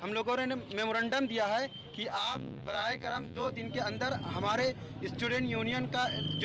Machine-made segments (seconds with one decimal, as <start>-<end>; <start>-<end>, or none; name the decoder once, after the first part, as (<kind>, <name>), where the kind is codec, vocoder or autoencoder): 2.1-3.5 (vocoder, Vocos)